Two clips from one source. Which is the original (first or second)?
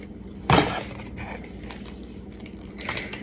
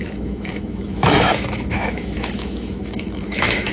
first